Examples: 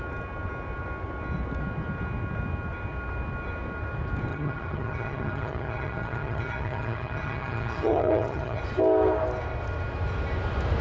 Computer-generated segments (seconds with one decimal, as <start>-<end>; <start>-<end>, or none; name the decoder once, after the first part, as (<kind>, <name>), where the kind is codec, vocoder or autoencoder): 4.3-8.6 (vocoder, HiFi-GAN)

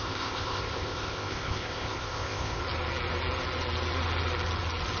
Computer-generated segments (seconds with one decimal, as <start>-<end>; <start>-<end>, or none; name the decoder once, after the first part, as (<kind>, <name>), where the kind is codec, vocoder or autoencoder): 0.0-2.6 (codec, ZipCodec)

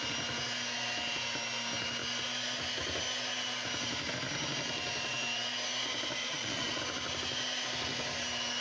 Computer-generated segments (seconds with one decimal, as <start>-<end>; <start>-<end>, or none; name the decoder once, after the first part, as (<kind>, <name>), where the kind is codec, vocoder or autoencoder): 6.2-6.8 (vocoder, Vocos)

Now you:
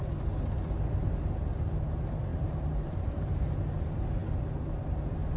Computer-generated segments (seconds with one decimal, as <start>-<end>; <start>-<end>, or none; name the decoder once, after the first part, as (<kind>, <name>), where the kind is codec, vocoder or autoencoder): 2.3-3.4 (vocoder, BigVGAN v2)

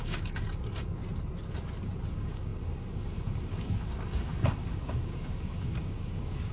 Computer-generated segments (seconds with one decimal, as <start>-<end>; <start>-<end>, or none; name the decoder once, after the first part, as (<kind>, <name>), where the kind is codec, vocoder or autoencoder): 0.0-1.0 (codec, DAC); 2.1-6.5

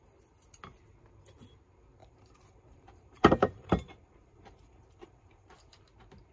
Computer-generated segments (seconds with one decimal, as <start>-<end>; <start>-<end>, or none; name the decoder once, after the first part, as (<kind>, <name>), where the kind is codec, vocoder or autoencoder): 2.0-5.8 (vocoder, BigVGAN v2)

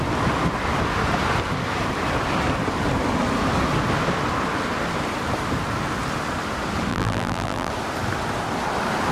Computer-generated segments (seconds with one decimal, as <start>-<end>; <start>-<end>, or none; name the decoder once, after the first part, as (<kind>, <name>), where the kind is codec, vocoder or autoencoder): 6.9-7.7 (vocoder, BigVGAN v2)